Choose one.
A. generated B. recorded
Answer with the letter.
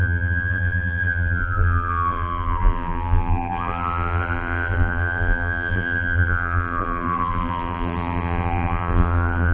A